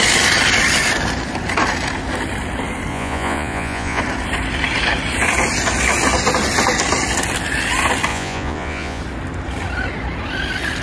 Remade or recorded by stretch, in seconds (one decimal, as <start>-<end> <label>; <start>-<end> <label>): 0.0-2.9 recorded; 2.9-4.0 remade; 4.0-8.1 recorded; 8.1-9.0 remade; 9.0-10.8 recorded